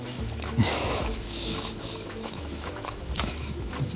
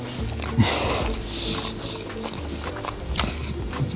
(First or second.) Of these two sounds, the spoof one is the first